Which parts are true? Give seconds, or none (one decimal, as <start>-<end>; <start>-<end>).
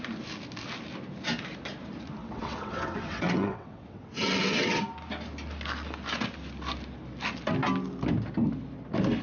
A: 0.0-2.2; 4.8-9.2